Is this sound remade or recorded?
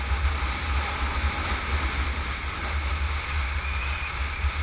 recorded